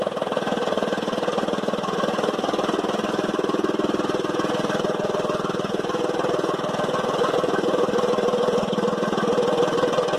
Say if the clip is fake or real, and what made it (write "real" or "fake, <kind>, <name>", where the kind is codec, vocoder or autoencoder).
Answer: real